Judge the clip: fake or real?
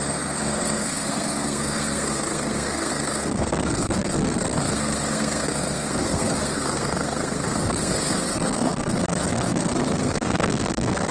fake